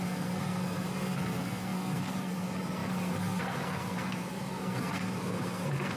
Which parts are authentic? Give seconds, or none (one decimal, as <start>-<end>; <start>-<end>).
none